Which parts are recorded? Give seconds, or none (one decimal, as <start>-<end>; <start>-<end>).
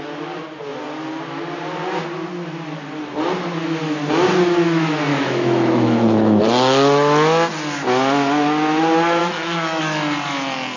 0.0-5.1; 6.4-9.2; 9.8-10.8